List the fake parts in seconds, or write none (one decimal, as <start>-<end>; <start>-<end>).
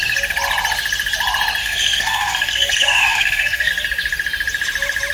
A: 1.6-3.7